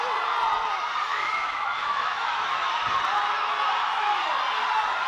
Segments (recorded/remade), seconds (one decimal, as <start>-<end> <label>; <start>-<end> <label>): 0.0-1.1 recorded; 1.1-2.6 remade; 2.6-5.1 recorded